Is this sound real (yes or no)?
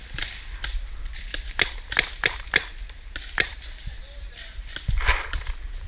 yes